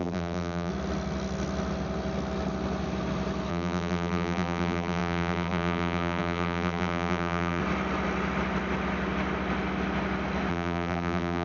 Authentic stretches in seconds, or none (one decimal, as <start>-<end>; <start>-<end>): 0.7-3.5; 7.6-10.5